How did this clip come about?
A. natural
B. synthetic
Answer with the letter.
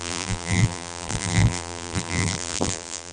B